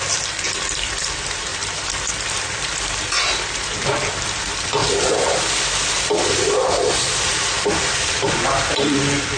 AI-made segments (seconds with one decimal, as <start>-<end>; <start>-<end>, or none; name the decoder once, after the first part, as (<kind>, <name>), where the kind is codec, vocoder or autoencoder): 0.0-9.4 (vocoder, BigVGAN v2)